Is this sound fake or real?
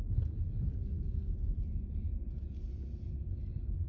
real